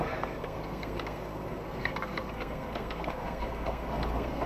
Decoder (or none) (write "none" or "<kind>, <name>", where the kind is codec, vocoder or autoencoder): codec, SNAC